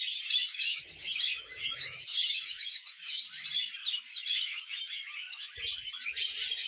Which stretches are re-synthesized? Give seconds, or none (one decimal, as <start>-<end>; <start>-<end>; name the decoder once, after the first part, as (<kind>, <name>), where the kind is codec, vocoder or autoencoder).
0.4-3.2 (autoencoder, DAC-VAE); 3.8-5.5